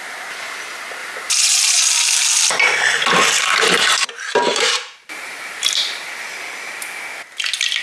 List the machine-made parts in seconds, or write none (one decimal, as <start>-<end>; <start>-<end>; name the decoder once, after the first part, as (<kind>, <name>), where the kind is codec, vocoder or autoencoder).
1.0-1.8 (vocoder, BigVGAN v2); 4.5-6.0